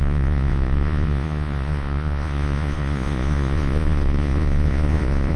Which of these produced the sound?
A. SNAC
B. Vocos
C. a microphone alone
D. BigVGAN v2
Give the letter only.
B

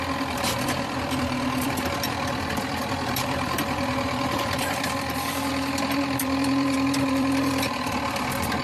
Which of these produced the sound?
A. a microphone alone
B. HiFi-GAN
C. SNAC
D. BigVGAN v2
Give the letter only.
D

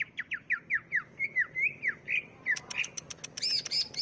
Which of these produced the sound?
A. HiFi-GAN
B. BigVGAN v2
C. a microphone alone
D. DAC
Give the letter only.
C